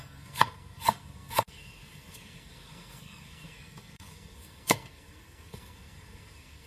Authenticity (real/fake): fake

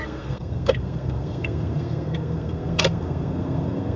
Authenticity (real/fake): fake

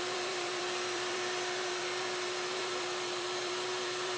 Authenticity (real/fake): fake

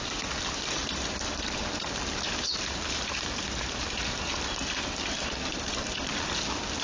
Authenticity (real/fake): real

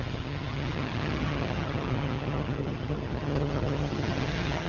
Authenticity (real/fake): fake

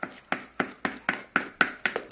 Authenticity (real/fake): real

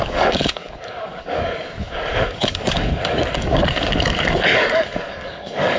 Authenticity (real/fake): fake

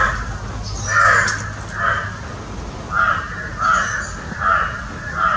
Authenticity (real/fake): real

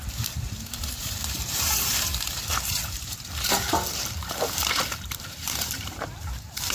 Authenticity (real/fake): fake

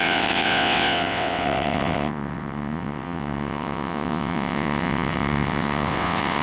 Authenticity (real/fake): fake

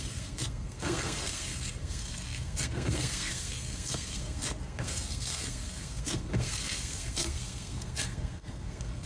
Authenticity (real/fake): fake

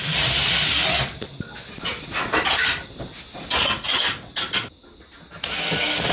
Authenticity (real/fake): real